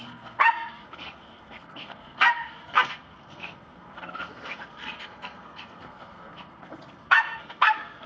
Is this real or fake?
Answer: fake